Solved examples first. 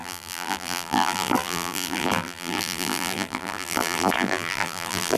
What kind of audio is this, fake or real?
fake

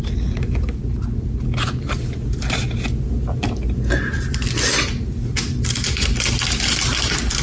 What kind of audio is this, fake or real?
real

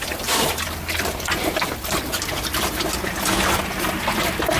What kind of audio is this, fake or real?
real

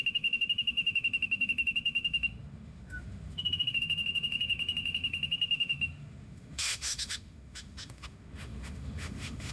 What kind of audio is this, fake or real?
fake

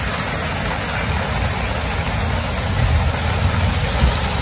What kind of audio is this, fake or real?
real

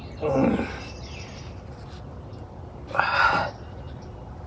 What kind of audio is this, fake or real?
real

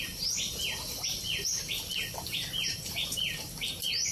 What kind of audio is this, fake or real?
real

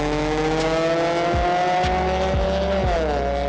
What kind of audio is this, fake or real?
real